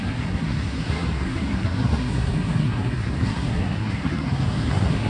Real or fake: fake